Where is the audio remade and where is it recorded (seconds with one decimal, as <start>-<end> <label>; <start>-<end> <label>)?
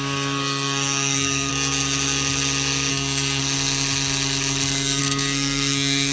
0.0-1.5 remade; 1.5-2.9 recorded; 2.9-3.4 remade; 3.4-5.0 recorded; 5.0-6.1 remade